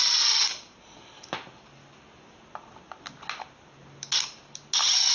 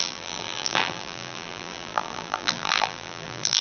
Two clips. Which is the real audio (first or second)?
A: first